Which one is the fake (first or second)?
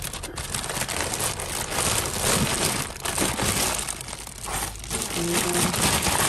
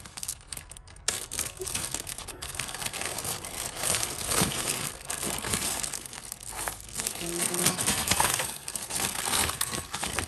second